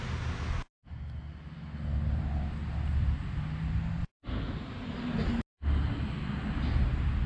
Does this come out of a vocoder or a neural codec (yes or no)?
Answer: no